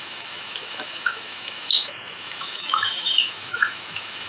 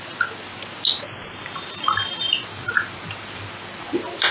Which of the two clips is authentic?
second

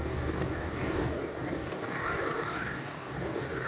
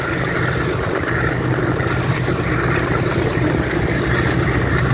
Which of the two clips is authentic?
second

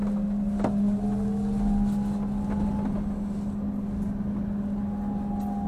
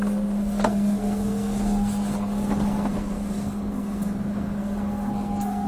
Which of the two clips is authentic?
first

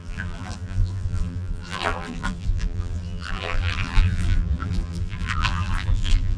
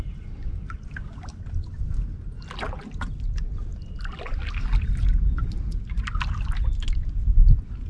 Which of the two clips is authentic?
second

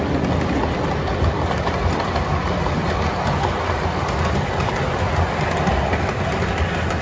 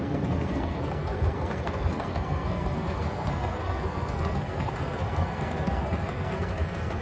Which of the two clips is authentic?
first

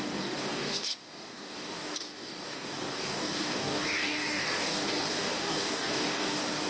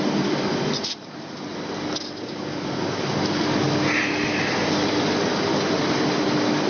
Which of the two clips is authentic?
second